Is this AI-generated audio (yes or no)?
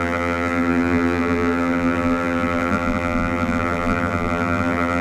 yes